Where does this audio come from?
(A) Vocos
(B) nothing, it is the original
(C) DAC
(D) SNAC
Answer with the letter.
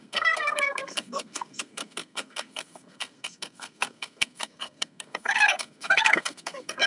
D